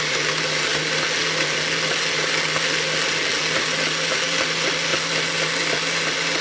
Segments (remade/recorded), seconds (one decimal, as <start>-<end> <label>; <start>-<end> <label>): 0.0-6.4 recorded